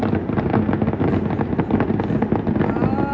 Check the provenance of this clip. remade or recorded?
recorded